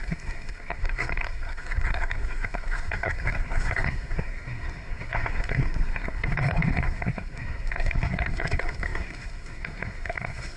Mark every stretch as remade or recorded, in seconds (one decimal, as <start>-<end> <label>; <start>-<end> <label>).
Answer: 0.0-10.6 remade